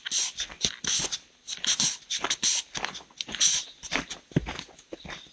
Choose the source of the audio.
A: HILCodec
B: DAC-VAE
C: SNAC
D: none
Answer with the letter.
D